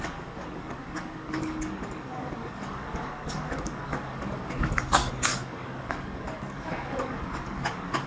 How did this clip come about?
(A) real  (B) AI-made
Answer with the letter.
B